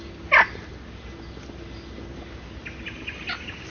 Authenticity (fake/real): real